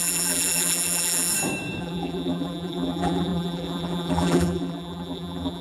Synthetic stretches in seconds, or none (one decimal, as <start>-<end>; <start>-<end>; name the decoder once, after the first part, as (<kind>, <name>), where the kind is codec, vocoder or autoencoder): 0.0-1.3 (vocoder, BigVGAN v2); 1.8-5.6